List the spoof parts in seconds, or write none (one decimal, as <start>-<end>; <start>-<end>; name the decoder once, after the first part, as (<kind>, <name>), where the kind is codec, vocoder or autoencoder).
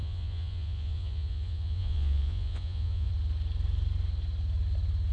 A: 0.0-3.1 (vocoder, Vocos)